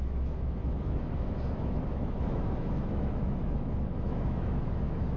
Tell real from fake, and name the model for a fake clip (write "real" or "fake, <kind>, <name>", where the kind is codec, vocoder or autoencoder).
fake, autoencoder, DAC-VAE